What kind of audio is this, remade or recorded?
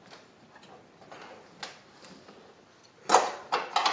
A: recorded